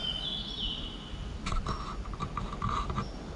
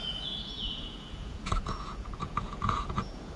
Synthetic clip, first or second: second